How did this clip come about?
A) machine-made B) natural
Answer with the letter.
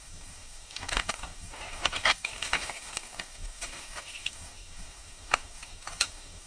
A